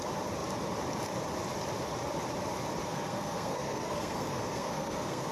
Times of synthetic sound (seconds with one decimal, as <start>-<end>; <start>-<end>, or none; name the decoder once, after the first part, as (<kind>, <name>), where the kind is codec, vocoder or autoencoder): 2.8-5.3 (codec, SNAC)

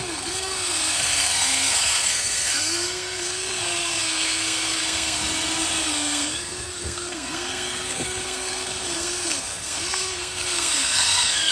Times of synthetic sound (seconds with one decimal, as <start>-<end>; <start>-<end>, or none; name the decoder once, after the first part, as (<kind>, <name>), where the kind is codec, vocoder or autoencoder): 0.0-5.2 (codec, SNAC); 5.8-11.5

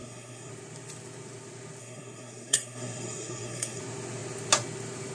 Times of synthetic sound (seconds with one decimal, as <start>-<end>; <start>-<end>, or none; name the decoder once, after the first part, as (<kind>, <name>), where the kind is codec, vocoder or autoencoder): 0.0-0.5 (codec, SNAC); 1.8-3.8

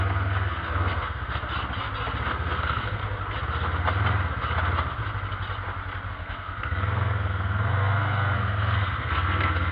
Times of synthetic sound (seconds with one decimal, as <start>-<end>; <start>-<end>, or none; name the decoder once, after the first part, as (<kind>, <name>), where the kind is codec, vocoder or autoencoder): 0.0-1.4 (codec, SNAC); 2.2-3.0; 6.1-9.7